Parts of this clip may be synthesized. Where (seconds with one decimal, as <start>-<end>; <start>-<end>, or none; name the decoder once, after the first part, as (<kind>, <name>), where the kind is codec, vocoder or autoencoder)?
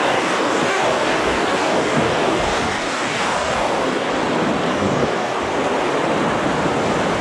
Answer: 0.0-4.1 (codec, DAC); 4.7-5.4